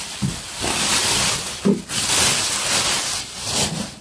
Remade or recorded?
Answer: recorded